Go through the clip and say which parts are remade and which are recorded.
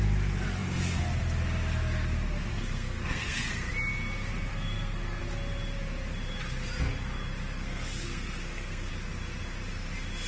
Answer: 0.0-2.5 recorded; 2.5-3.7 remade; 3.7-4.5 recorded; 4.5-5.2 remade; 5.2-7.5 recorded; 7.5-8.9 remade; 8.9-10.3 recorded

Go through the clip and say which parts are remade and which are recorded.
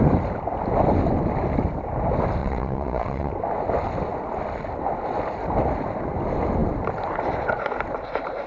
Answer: 0.0-2.4 recorded; 2.4-3.3 remade; 3.3-8.5 recorded